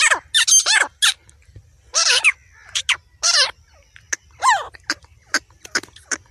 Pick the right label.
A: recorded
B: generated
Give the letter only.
A